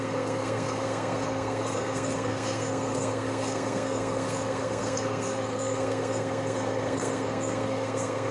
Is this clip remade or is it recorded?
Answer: remade